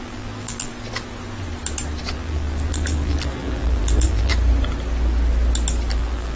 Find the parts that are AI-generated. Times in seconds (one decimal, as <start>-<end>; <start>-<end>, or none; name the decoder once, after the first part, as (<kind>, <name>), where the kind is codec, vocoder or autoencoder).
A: 0.0-0.7 (vocoder, BigVGAN v2); 2.1-4.3; 5.9-6.4